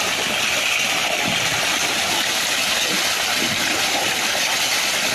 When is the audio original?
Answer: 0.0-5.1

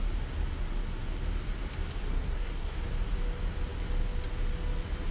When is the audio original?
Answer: 0.0-2.1; 2.7-5.1

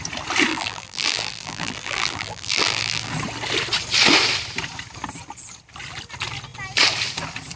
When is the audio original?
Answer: 0.0-0.5; 3.1-7.6

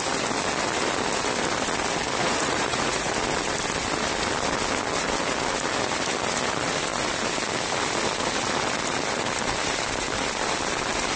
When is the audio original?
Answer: 0.0-2.2; 3.1-11.2

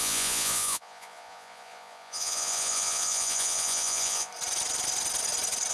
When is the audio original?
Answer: 4.3-5.7